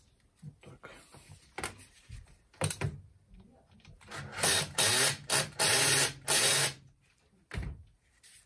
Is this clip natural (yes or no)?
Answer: yes